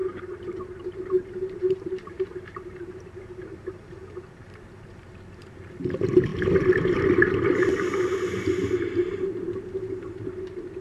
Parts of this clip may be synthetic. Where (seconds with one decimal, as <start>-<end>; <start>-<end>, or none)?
0.0-4.5

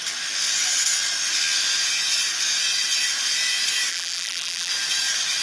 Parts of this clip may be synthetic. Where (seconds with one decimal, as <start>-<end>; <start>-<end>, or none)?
3.9-4.7

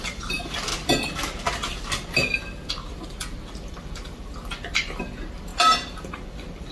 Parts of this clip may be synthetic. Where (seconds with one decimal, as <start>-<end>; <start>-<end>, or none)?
0.0-0.7; 2.7-5.5; 6.1-6.7